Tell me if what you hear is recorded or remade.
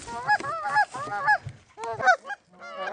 recorded